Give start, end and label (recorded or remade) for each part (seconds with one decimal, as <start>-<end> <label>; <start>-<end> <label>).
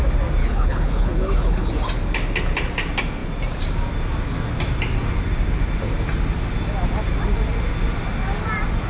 0.0-0.4 recorded; 0.4-1.7 remade; 1.7-8.9 recorded